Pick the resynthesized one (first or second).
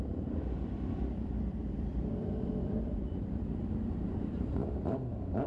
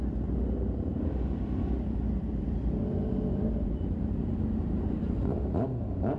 first